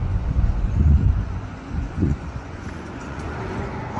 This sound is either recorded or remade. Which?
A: remade